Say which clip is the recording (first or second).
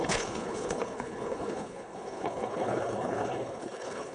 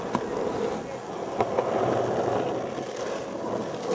second